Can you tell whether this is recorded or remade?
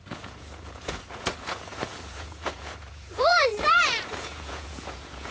remade